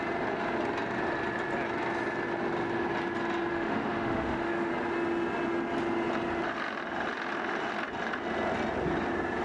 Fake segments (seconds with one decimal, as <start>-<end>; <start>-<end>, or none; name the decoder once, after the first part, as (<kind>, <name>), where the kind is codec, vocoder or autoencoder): 3.5-4.7 (autoencoder, DAC-VAE)